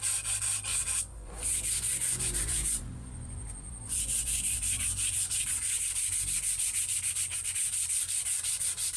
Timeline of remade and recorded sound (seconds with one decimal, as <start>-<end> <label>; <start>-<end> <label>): 0.0-0.7 recorded; 0.7-5.8 remade; 5.8-9.0 recorded